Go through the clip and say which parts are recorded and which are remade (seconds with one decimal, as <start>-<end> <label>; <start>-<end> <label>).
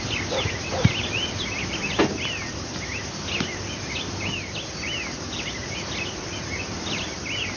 0.0-2.7 remade; 2.7-5.6 recorded; 5.6-7.6 remade